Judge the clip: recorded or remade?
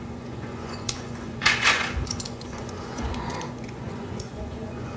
remade